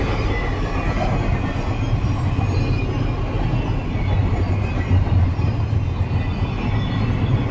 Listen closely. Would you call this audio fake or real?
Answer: real